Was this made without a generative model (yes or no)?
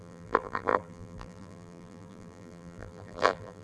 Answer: no